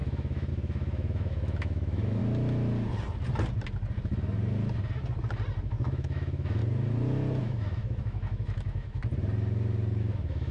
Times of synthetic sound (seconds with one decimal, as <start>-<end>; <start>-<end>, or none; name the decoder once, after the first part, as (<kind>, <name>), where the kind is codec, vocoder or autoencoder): 0.0-2.2 (autoencoder, DAC-VAE); 5.6-6.6; 7.4-9.1; 10.0-10.5